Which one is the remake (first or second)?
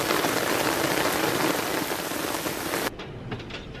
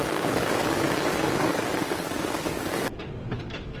second